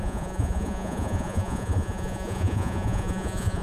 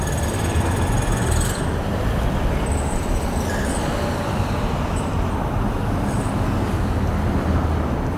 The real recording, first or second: second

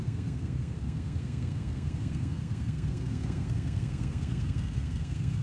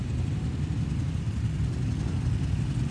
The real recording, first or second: second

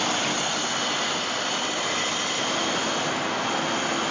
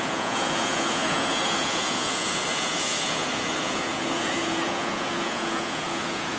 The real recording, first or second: first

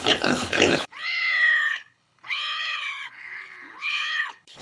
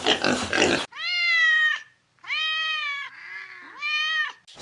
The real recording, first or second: second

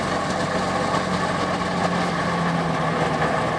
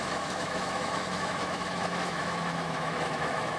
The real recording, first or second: first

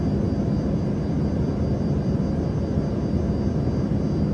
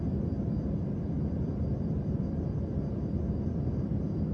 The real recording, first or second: first